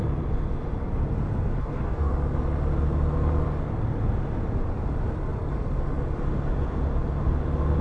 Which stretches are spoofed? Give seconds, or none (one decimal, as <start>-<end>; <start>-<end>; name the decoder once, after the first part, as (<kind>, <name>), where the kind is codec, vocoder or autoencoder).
1.6-2.1 (codec, DAC)